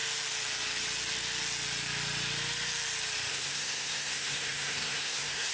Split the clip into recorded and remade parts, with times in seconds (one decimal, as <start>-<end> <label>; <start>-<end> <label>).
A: 0.0-3.3 recorded; 3.3-5.5 remade